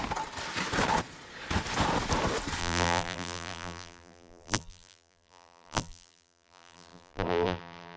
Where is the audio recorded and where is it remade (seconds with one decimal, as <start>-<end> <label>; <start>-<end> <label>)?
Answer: 0.0-2.6 recorded; 2.6-8.0 remade